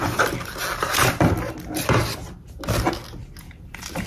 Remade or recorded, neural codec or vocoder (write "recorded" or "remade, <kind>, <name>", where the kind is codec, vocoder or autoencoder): recorded